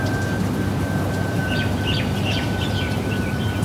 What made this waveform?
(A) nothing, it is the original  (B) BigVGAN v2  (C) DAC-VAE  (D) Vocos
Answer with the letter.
B